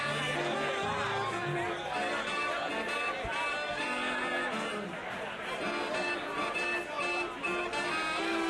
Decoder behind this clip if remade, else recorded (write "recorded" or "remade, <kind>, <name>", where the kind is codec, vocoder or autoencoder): recorded